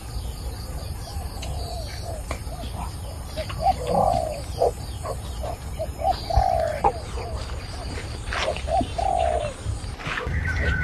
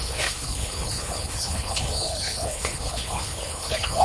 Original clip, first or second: first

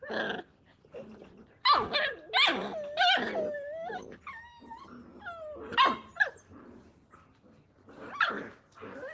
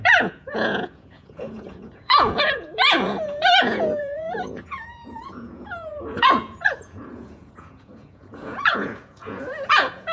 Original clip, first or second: first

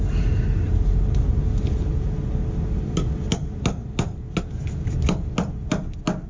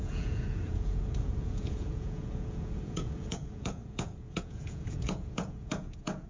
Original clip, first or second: first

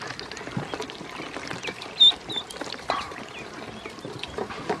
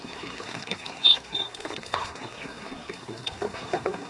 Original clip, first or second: first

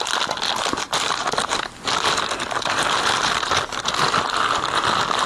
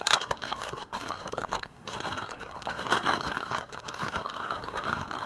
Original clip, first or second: first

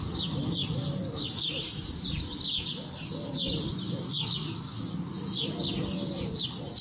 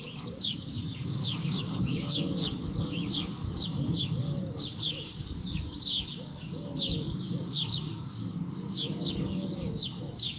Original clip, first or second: first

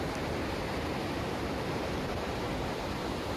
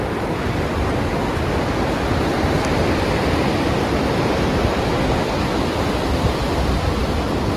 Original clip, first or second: second